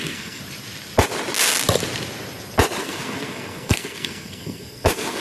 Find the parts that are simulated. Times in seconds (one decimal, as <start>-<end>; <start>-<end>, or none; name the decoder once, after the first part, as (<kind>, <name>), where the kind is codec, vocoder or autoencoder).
0.0-0.4 (codec, SNAC); 2.8-5.2